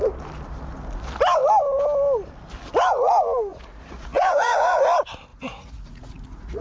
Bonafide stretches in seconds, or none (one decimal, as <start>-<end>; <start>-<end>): 0.0-3.5; 4.8-5.3